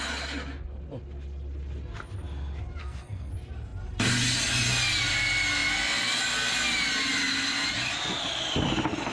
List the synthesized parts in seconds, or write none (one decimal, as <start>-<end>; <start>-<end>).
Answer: 2.8-3.3